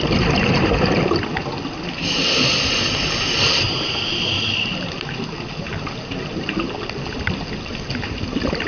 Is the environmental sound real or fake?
real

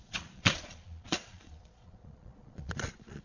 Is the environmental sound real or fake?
fake